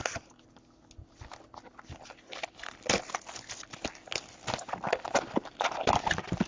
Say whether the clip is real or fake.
real